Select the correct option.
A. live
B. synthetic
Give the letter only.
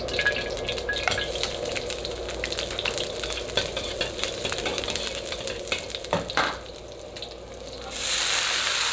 A